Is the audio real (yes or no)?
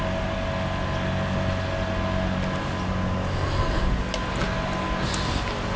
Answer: yes